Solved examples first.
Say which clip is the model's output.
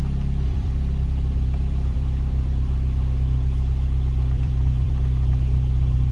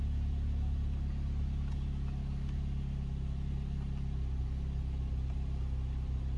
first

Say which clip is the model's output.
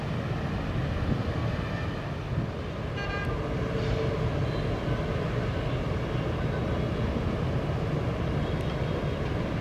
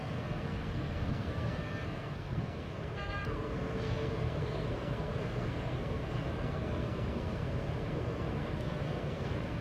second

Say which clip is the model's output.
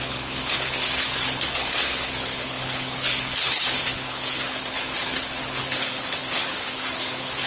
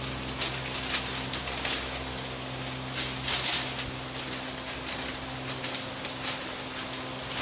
first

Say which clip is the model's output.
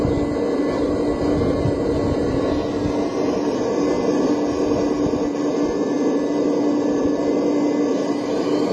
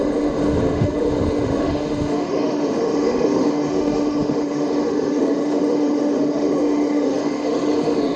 second